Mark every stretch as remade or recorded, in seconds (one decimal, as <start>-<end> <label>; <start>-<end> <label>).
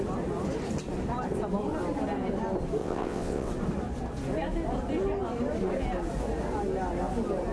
0.0-2.8 recorded; 2.8-3.5 remade; 3.5-7.5 recorded